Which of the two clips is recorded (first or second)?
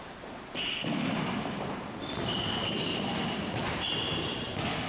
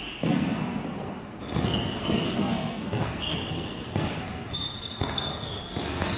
first